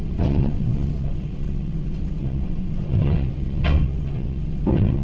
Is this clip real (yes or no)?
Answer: no